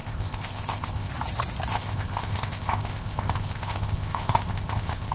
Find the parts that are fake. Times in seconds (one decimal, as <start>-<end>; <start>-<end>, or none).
0.0-1.1; 1.7-5.1